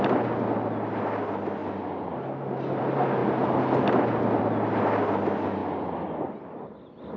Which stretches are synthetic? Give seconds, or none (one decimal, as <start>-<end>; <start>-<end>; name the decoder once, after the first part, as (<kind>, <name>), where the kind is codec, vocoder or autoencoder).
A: none